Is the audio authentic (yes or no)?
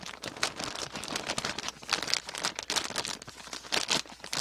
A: yes